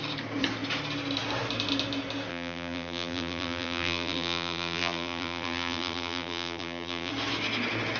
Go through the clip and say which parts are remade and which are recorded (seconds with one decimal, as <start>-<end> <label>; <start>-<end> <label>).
0.0-2.3 recorded; 2.3-7.1 remade; 7.1-8.0 recorded